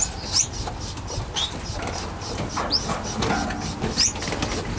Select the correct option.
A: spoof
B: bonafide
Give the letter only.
B